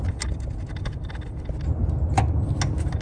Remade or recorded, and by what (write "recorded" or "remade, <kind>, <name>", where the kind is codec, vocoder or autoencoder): recorded